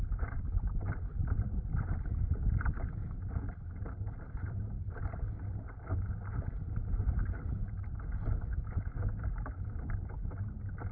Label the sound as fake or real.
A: real